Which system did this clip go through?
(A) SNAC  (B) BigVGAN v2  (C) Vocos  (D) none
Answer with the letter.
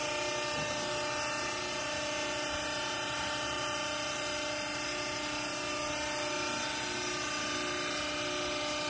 D